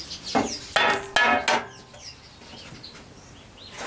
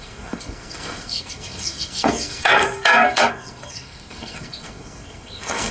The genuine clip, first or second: first